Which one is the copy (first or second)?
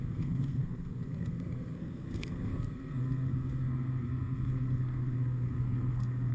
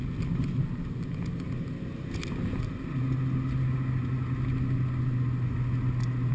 first